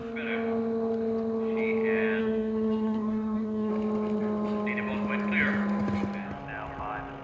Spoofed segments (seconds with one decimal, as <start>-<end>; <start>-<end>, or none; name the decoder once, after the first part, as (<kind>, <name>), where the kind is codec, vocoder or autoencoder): 2.2-3.7 (codec, SNAC)